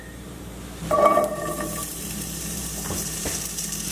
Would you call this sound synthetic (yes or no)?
yes